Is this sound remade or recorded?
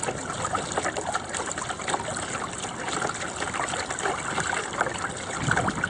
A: recorded